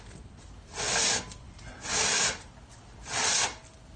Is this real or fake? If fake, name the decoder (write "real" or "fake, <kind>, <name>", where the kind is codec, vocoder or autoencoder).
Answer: real